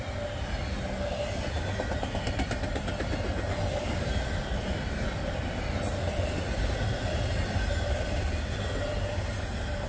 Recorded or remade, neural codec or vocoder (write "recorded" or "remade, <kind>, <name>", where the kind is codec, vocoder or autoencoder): recorded